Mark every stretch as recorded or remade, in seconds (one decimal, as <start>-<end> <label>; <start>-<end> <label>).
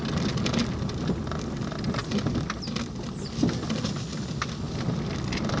0.0-5.6 recorded